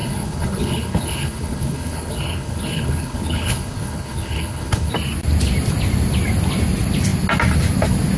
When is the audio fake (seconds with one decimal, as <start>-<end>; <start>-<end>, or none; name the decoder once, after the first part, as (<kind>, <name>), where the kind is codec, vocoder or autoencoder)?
0.0-4.9 (codec, HILCodec)